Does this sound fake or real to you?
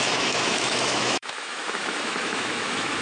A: fake